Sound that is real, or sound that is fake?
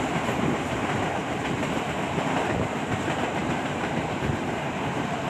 fake